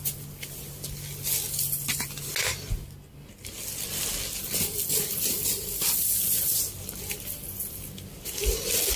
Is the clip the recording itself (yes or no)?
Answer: yes